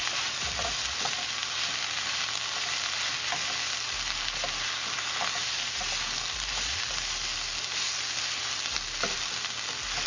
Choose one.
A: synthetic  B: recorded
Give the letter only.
B